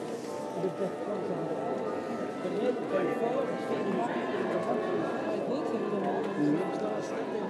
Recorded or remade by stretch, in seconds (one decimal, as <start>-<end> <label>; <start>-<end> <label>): 0.0-7.5 recorded